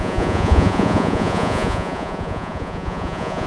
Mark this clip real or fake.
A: fake